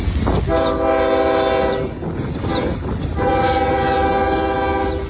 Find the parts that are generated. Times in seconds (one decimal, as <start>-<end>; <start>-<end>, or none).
none